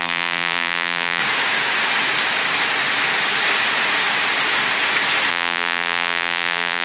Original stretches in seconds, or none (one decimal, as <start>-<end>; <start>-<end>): 1.2-5.3